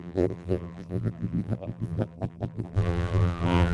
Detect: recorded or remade remade